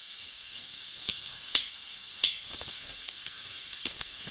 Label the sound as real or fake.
fake